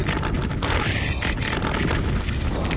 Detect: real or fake real